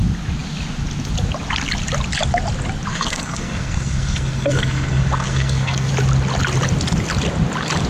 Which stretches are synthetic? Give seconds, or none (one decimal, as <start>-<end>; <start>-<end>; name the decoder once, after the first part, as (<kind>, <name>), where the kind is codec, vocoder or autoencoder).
2.9-5.9 (codec, SNAC)